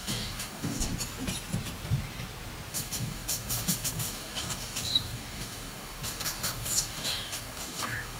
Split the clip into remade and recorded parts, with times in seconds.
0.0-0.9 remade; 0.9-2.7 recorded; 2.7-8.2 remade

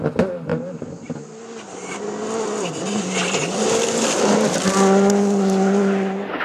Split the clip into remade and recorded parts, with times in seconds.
0.0-6.4 recorded

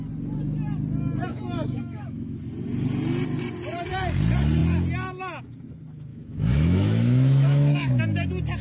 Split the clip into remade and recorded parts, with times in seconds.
0.0-1.3 recorded; 1.3-2.4 remade; 2.4-6.1 recorded; 6.1-8.0 remade; 8.0-8.6 recorded

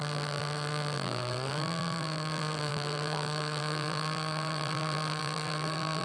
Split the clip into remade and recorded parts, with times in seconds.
0.0-6.0 remade

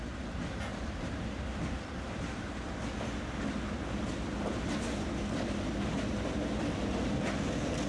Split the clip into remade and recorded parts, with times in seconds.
0.0-0.7 recorded; 0.7-1.4 remade; 1.4-7.9 recorded

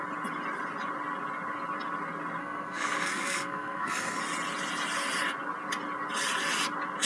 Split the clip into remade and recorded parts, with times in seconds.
0.0-2.4 recorded; 2.4-4.2 remade; 4.2-7.0 recorded